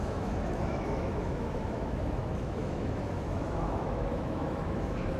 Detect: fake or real fake